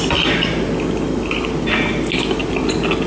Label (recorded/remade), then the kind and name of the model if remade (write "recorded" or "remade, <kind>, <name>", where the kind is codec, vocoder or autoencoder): recorded